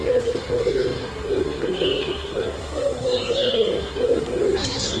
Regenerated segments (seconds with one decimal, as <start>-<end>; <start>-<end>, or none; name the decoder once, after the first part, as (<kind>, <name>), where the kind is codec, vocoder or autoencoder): 0.0-5.0 (codec, SNAC)